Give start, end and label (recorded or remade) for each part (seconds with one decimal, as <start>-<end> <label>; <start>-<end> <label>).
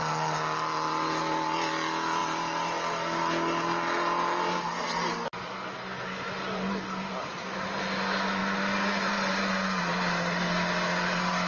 0.0-11.5 recorded